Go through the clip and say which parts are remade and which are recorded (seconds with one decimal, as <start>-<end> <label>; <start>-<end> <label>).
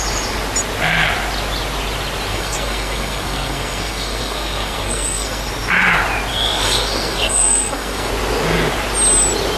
0.0-2.3 recorded; 2.3-5.5 remade; 5.5-6.3 recorded; 6.3-8.1 remade; 8.1-9.6 recorded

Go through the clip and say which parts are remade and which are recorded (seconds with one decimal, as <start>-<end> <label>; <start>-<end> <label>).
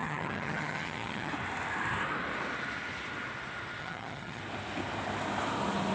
0.0-1.3 remade; 1.3-3.8 recorded; 3.8-4.4 remade; 4.4-5.9 recorded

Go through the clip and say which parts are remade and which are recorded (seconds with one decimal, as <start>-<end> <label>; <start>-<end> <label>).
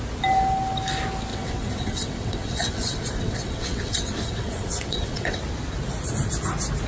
0.0-1.3 recorded; 1.3-5.4 remade; 5.4-6.9 recorded